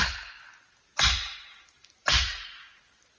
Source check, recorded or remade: recorded